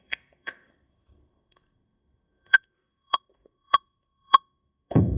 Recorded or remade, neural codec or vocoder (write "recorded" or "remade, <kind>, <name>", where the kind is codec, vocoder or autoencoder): remade, codec, SNAC